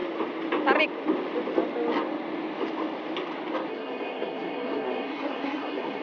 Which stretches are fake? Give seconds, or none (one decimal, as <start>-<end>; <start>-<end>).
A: 3.7-6.0